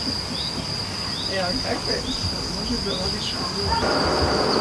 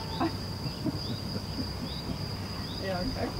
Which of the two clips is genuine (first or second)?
first